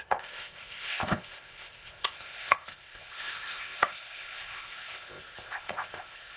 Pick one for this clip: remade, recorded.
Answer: remade